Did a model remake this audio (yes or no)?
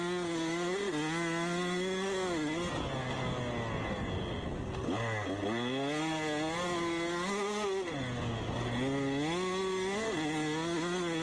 no